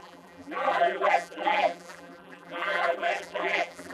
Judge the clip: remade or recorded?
remade